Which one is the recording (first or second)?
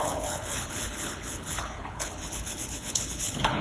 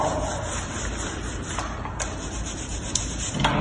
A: second